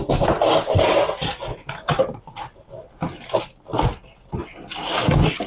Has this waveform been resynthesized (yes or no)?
no